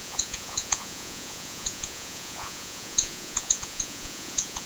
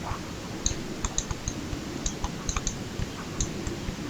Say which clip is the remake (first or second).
first